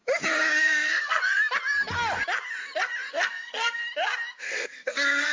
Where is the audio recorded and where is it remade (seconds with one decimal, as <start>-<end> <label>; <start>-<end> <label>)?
0.0-0.6 recorded; 0.6-1.2 remade; 1.2-3.1 recorded; 3.1-3.8 remade; 3.8-4.4 recorded; 4.4-5.3 remade